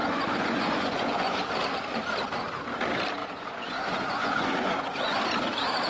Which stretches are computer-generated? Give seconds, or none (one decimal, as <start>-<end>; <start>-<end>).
0.0-1.4; 3.2-5.2